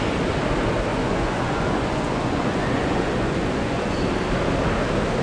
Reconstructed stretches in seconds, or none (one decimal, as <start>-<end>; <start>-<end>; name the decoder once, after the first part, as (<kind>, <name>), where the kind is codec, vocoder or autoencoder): 0.9-4.0 (vocoder, Vocos)